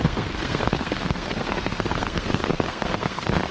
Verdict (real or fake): fake